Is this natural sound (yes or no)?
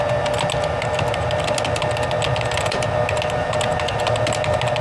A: yes